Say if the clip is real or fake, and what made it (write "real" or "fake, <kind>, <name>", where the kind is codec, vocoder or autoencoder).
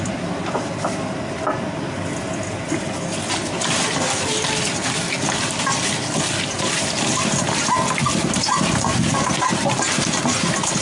real